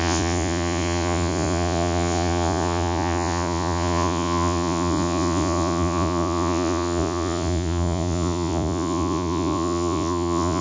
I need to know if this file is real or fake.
fake